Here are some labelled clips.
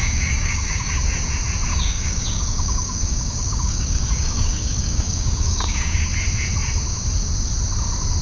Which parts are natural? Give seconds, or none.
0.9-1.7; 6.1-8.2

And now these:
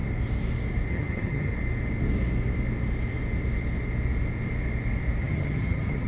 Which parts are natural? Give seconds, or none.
0.0-0.9; 1.5-5.2

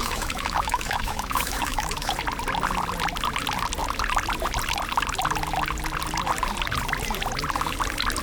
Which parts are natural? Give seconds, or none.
2.1-8.2

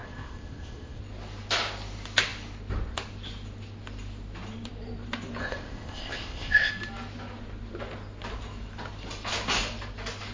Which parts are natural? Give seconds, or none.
1.0-5.4; 6.7-10.3

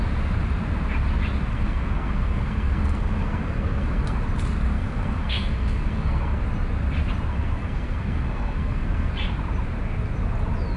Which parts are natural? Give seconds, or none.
0.0-1.5; 4.2-4.7; 6.4-7.3; 9.1-10.8

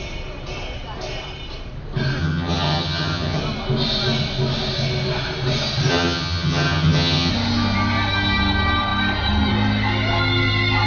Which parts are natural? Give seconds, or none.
0.0-2.2; 3.4-5.9; 7.3-10.9

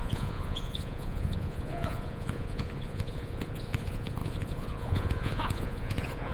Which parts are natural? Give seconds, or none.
none

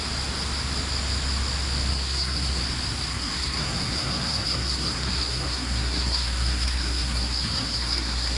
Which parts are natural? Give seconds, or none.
0.0-1.9; 2.6-3.1